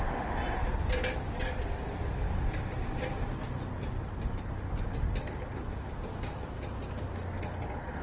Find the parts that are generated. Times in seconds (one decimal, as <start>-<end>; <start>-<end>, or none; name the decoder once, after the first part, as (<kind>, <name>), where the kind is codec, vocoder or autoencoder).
none